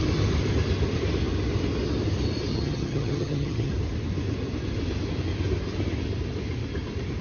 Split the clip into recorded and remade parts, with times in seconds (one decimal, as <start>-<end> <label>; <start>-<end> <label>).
0.0-2.5 recorded; 2.5-3.7 remade; 3.7-7.2 recorded